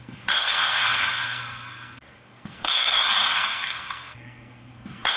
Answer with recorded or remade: remade